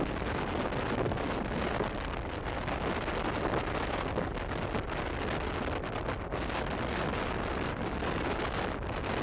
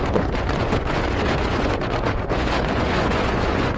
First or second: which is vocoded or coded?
second